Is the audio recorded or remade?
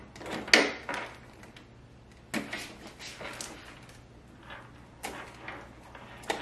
recorded